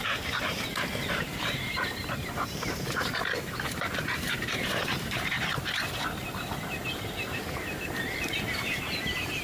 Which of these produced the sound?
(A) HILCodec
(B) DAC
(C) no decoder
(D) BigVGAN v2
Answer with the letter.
D